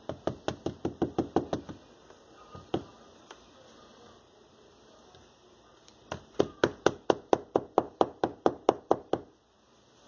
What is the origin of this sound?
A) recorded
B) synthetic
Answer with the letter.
A